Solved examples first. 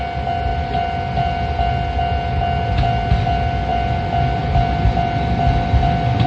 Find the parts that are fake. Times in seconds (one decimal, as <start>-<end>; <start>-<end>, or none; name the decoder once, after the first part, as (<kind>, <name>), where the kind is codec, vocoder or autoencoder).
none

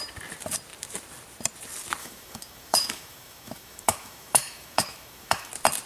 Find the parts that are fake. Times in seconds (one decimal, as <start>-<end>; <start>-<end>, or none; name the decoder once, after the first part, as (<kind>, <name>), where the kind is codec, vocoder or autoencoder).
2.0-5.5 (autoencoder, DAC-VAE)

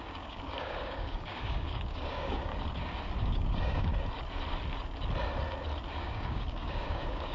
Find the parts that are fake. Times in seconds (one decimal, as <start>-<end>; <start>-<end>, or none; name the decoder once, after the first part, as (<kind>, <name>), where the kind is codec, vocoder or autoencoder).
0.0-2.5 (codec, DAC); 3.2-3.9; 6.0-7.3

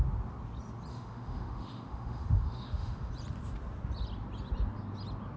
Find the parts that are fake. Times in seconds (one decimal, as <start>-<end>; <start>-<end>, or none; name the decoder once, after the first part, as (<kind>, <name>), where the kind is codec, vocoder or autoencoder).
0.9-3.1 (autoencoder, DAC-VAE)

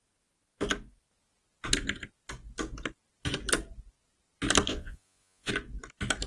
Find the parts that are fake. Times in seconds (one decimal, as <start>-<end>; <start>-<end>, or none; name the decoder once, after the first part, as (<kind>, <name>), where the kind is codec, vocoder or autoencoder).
4.7-5.5 (vocoder, Vocos)

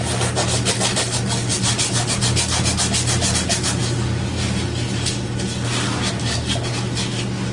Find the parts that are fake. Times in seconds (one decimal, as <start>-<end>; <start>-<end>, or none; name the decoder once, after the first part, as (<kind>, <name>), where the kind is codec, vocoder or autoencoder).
none

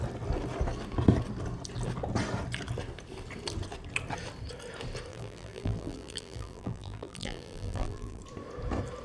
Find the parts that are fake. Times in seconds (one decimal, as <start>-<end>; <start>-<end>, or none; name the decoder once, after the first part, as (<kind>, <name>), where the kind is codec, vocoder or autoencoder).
5.1-8.2 (vocoder, BigVGAN v2)